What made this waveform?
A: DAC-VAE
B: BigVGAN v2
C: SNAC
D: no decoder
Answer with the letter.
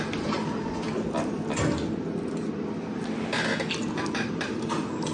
D